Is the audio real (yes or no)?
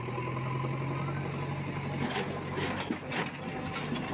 yes